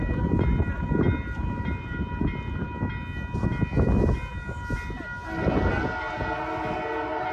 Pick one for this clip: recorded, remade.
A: recorded